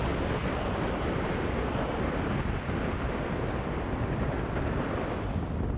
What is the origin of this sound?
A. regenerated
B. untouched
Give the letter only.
B